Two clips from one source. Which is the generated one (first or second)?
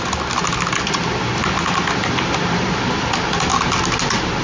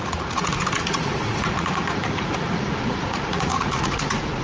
second